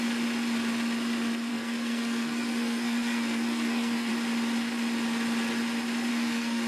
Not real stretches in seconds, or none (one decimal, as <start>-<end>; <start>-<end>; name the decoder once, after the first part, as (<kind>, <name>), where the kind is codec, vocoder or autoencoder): 1.5-4.1 (codec, SNAC); 6.1-6.7